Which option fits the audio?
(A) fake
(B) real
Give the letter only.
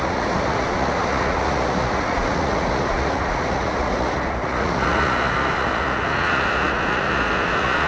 A